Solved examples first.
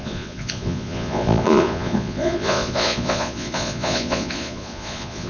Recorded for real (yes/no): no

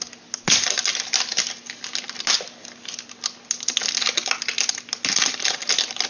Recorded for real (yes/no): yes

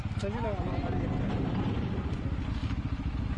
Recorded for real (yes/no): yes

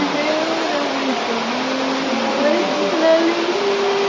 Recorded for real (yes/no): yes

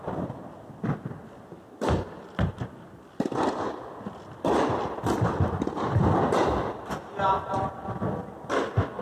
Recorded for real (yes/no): yes